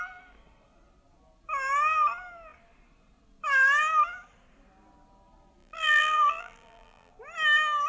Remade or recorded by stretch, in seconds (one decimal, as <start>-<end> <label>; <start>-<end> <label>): 0.0-5.6 recorded; 5.6-7.1 remade; 7.1-7.9 recorded